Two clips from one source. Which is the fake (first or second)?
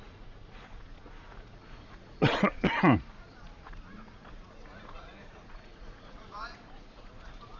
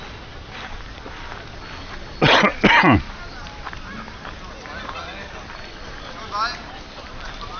first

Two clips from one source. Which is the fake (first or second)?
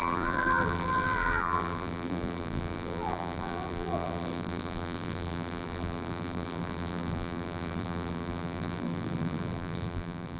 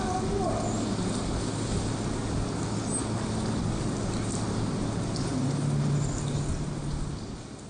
first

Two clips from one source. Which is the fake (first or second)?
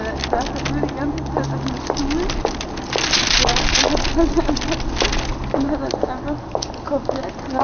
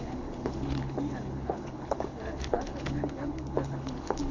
second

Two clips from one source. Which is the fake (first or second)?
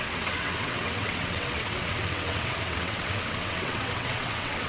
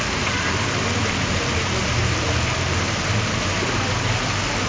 first